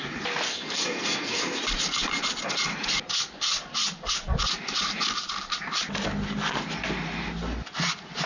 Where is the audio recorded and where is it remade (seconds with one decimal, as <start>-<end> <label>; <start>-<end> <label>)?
0.0-0.5 recorded; 0.5-1.6 remade; 1.6-8.3 recorded